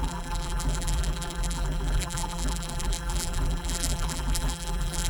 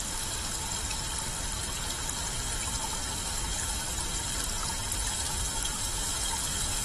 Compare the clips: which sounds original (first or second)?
second